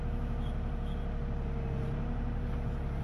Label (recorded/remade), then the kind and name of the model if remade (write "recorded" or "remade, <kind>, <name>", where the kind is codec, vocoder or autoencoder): recorded